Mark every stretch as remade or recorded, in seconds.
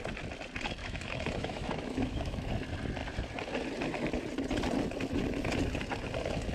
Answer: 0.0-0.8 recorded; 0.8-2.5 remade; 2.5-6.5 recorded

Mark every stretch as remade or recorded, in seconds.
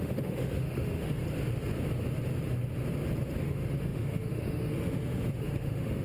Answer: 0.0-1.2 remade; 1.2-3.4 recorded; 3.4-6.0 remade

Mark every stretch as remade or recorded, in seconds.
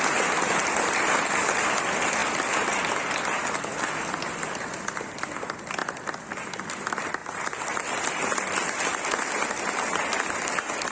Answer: 0.0-10.9 recorded